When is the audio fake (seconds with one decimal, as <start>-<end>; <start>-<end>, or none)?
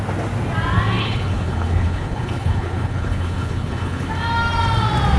1.0-4.1